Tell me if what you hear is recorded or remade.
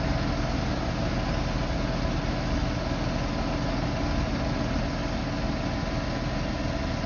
recorded